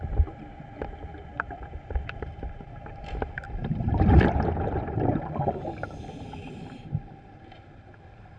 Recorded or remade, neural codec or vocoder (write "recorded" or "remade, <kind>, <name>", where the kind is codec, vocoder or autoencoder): remade, vocoder, BigVGAN v2